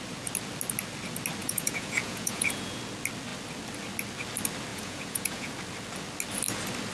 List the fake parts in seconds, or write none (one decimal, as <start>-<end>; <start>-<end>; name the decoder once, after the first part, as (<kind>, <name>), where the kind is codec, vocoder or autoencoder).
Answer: 1.4-2.8 (vocoder, Vocos); 4.7-5.5